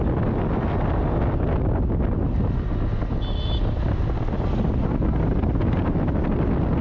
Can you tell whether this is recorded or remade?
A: recorded